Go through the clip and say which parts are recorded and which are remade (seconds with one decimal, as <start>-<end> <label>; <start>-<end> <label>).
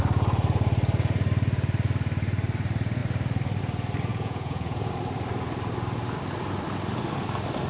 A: 0.0-4.1 recorded; 4.1-4.9 remade; 4.9-7.7 recorded